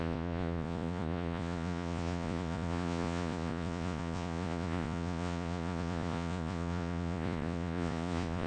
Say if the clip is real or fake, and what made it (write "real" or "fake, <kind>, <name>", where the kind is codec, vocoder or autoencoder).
fake, vocoder, Vocos